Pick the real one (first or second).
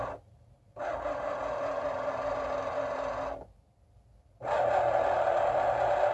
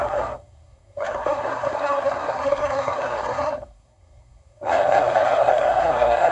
first